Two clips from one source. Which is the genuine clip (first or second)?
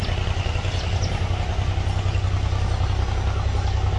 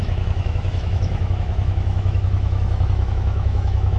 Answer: first